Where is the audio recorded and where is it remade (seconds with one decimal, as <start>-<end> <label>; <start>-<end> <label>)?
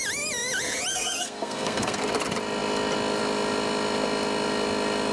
0.0-0.9 recorded; 0.9-2.0 remade; 2.0-5.1 recorded